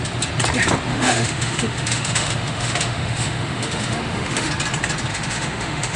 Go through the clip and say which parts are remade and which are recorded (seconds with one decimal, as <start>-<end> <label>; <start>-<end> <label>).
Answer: 0.0-0.9 recorded; 0.9-4.5 remade; 4.5-5.1 recorded; 5.1-6.0 remade